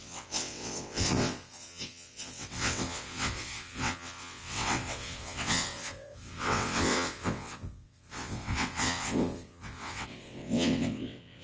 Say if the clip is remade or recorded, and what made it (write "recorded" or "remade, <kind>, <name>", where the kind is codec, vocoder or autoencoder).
remade, vocoder, WaveNeXt